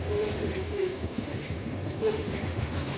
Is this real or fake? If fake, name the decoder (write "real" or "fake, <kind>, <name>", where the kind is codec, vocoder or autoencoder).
fake, autoencoder, DAC-VAE